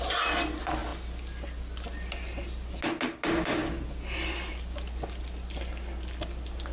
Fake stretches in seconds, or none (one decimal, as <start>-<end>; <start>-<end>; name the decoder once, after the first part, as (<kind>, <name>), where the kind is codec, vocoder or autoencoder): none